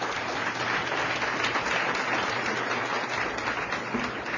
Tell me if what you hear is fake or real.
real